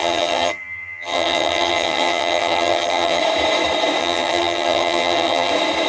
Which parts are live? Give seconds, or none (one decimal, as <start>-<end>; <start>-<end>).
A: 3.2-4.0; 5.5-5.9